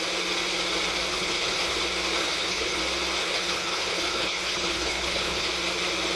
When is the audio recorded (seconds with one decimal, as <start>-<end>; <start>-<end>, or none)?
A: 0.0-1.1; 1.8-2.2; 2.8-3.2; 5.5-6.2